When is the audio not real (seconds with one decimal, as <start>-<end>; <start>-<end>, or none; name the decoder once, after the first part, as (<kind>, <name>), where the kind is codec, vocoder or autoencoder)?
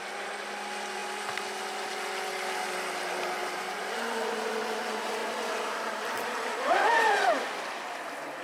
3.4-4.5 (vocoder, BigVGAN v2); 5.2-7.2